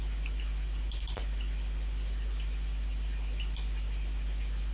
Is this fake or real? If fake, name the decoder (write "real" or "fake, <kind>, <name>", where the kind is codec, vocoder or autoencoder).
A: real